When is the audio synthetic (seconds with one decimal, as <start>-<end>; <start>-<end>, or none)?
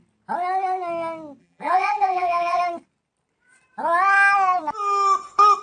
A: 1.4-2.6